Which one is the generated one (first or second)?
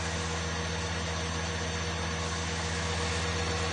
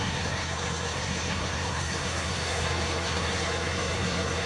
second